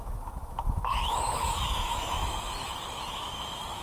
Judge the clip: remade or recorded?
remade